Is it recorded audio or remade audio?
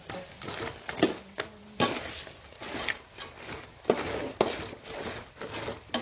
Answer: recorded